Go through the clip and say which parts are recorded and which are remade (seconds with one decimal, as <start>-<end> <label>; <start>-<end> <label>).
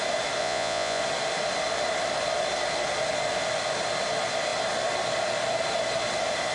0.0-0.4 recorded; 0.4-1.0 remade; 1.0-6.5 recorded